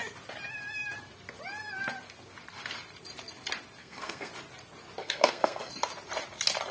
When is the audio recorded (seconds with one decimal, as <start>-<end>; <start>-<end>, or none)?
0.0-3.8; 4.3-5.0; 5.7-6.7